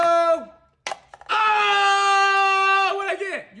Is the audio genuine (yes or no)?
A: yes